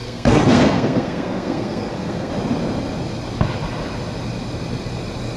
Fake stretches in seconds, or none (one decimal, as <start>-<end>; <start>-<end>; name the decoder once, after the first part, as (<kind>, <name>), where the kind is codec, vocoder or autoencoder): 0.0-2.3 (codec, SNAC)

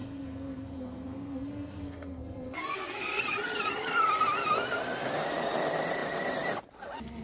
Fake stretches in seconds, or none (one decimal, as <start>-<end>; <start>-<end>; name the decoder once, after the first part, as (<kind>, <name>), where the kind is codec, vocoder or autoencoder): 0.0-3.2 (codec, SNAC)

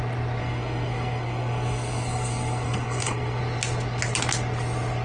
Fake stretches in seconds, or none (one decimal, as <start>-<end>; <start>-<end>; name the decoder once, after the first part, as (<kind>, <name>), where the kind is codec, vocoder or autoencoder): 0.4-3.4 (codec, SNAC)

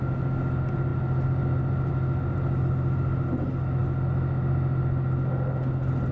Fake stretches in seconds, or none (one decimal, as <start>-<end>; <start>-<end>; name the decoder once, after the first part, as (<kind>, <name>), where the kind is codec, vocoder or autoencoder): none

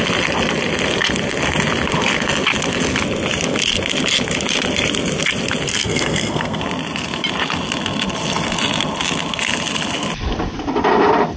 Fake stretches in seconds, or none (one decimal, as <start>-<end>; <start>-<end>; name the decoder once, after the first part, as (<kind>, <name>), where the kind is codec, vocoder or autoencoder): 5.7-6.6 (codec, SNAC)

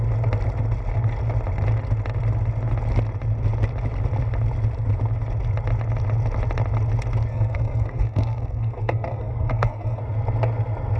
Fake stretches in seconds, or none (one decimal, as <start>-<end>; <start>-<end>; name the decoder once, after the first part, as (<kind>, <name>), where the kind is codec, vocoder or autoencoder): 7.3-10.0 (codec, SNAC)

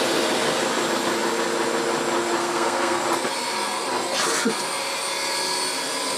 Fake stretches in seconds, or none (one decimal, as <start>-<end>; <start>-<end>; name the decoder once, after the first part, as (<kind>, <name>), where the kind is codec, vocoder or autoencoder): 2.4-3.0 (codec, SNAC)

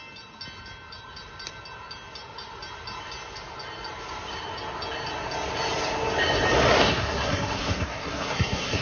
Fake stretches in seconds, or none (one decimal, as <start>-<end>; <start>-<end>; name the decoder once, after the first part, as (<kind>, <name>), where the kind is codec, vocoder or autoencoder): 6.7-8.8 (codec, SNAC)